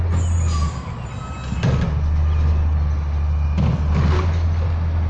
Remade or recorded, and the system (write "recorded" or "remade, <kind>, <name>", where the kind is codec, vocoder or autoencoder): recorded